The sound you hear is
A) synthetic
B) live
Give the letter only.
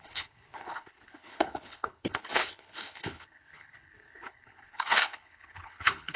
A